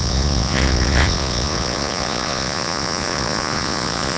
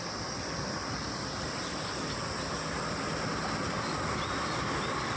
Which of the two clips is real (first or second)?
second